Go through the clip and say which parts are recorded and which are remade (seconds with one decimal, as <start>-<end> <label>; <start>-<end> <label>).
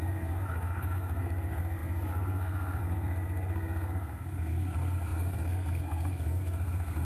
0.0-7.0 remade